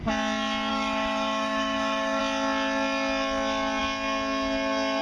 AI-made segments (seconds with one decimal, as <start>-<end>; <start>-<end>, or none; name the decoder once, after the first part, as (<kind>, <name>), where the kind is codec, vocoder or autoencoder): 0.7-2.2 (autoencoder, DAC-VAE)